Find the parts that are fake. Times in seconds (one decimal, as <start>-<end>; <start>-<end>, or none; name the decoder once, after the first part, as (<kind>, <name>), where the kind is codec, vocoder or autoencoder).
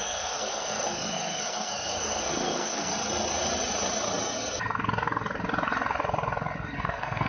0.0-2.9 (codec, SNAC); 6.8-7.3